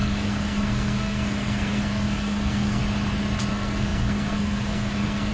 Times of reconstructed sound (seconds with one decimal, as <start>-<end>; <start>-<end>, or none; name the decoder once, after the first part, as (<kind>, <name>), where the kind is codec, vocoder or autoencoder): 0.0-2.8 (codec, SNAC); 3.5-5.3